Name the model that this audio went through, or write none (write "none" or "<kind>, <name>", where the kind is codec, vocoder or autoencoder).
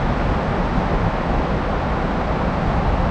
none